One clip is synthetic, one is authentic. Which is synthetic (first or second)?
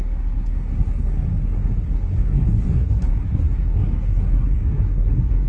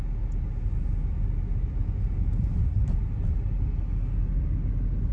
first